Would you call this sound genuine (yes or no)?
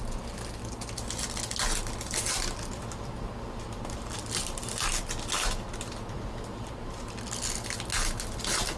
yes